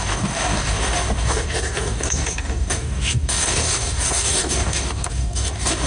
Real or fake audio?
fake